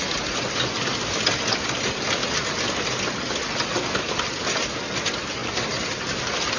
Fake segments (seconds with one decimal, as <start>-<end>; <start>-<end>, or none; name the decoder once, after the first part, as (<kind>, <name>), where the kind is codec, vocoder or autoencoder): none